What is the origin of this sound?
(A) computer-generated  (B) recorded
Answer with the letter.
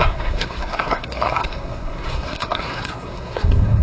A